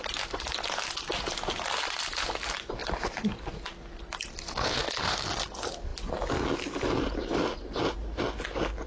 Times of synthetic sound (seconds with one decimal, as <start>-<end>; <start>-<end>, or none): none